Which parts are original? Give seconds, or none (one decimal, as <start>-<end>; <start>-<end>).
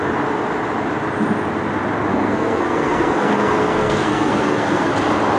0.0-2.1; 4.9-5.4